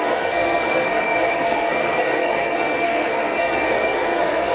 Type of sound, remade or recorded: remade